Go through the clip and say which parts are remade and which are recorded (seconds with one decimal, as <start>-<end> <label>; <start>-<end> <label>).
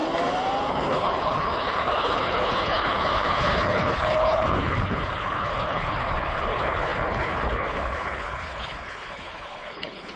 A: 0.0-0.7 recorded; 0.7-10.2 remade